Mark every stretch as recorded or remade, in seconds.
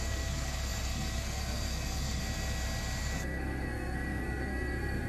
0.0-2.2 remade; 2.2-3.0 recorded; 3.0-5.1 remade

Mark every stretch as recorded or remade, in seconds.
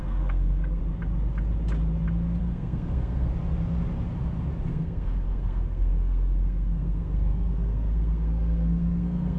0.0-0.8 remade; 0.8-2.4 recorded; 2.4-3.3 remade; 3.3-4.7 recorded; 4.7-9.4 remade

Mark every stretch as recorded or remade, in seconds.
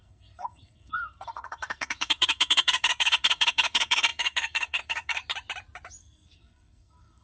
0.0-5.2 remade; 5.2-6.0 recorded; 6.0-7.2 remade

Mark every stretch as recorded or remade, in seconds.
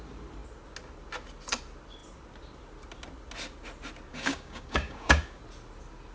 0.0-4.1 recorded; 4.1-5.4 remade; 5.4-6.1 recorded